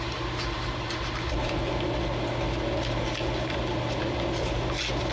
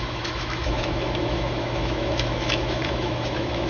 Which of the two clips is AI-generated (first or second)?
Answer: second